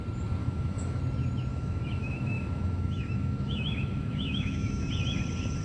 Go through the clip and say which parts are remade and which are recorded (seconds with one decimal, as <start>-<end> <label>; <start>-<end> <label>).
0.0-0.4 recorded; 0.4-1.0 remade; 1.0-1.5 recorded; 1.5-4.9 remade; 4.9-5.6 recorded